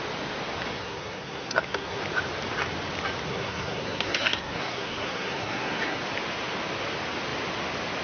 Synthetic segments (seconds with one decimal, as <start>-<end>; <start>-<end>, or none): 0.7-2.0; 3.3-6.0